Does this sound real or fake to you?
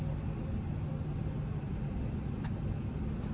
real